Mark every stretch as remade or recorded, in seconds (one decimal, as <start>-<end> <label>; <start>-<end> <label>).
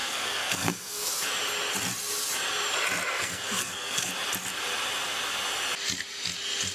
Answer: 0.0-1.1 remade; 1.1-3.1 recorded; 3.1-4.1 remade; 4.1-6.7 recorded